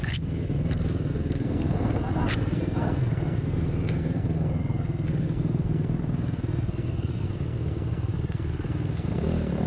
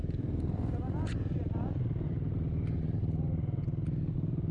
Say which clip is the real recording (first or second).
second